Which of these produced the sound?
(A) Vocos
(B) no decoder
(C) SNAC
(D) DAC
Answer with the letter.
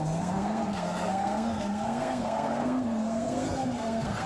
C